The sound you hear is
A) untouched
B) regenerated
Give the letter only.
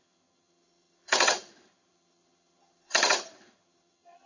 B